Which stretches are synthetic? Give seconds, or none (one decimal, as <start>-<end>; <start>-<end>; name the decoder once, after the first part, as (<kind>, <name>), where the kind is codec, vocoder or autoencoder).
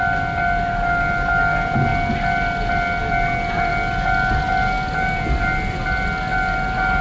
none